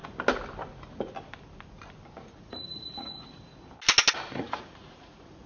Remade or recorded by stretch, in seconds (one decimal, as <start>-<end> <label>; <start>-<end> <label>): 0.0-2.4 recorded; 2.4-3.5 remade; 3.5-4.4 recorded; 4.4-5.5 remade